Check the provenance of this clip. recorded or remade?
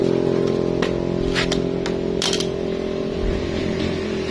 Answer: recorded